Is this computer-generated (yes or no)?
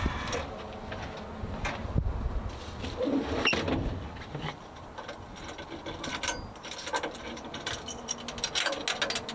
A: no